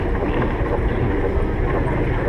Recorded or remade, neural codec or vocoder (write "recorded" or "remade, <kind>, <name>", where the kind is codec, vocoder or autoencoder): recorded